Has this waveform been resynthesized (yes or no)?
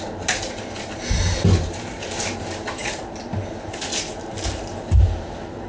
no